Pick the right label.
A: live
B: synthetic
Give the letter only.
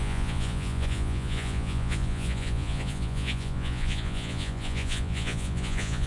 B